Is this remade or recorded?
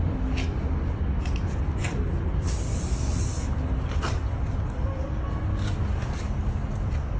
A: recorded